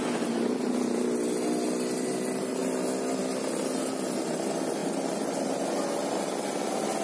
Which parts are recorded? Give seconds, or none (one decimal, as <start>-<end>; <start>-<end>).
0.0-7.0